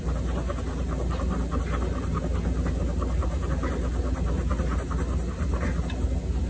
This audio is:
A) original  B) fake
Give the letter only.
A